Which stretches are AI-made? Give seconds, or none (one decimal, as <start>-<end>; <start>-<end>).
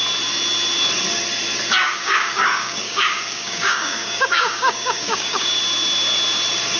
1.8-5.6